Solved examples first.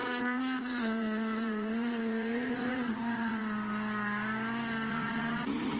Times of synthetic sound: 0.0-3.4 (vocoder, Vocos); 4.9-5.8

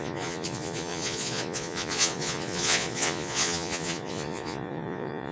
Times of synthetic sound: 0.0-5.3 (vocoder, Vocos)